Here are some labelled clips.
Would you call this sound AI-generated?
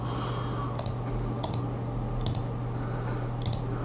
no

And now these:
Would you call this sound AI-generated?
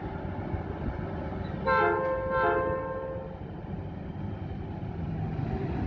no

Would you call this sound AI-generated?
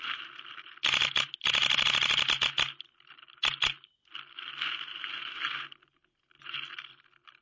no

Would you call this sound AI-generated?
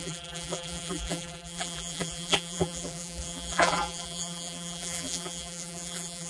yes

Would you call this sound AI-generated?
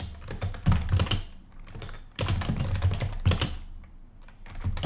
no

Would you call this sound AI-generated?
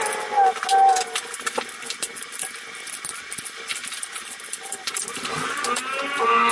no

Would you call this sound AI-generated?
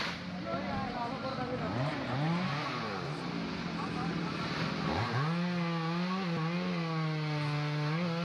no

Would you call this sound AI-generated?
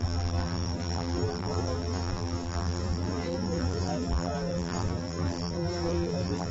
yes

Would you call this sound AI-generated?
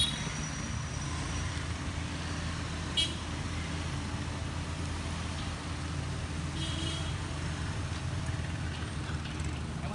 no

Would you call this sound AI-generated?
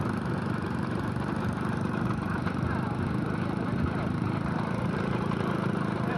yes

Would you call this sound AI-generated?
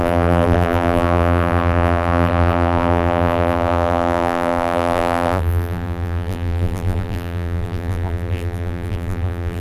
yes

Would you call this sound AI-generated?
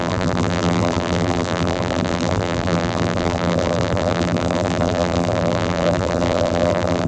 yes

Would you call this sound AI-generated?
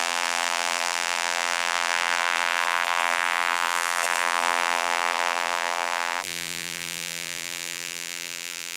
yes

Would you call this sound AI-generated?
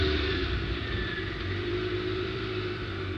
yes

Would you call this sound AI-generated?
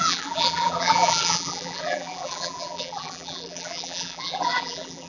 yes